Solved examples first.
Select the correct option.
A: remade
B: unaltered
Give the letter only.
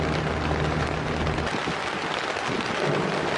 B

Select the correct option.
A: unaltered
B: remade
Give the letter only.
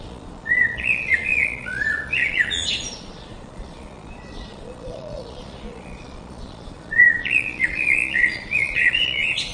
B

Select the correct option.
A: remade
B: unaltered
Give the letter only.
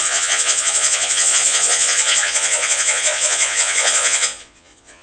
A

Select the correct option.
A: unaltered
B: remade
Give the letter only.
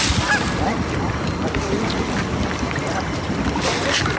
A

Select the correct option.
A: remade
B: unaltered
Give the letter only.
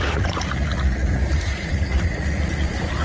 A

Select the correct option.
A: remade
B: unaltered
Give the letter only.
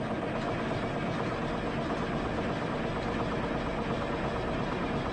B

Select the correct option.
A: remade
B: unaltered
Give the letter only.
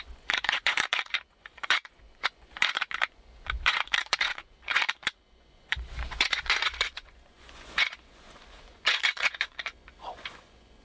A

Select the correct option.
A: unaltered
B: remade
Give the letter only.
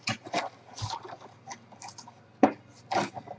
A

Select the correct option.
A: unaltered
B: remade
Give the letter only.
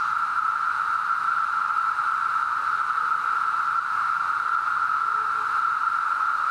A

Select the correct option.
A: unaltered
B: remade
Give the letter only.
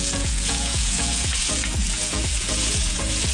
B